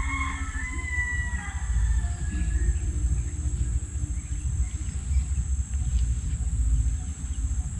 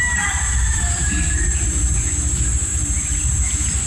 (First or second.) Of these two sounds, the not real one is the second